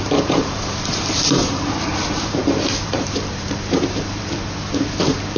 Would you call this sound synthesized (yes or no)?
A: yes